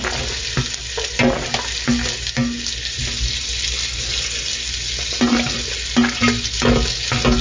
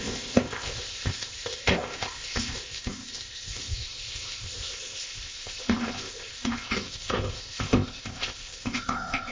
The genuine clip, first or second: first